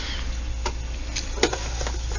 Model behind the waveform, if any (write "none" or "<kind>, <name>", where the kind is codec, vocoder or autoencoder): none